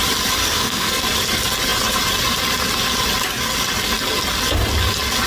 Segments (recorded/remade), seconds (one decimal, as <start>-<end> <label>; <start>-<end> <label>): 0.0-0.4 recorded; 0.4-1.0 remade; 1.0-5.3 recorded